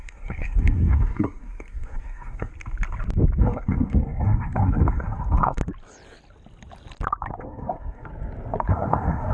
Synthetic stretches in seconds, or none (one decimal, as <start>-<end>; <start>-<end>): 0.0-2.5; 3.4-5.6; 7.4-8.1; 8.7-9.3